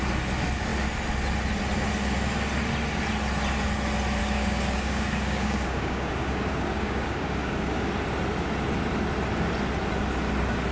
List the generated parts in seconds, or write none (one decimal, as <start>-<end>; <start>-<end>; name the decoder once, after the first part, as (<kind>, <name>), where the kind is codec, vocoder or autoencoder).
4.2-7.9 (codec, DAC)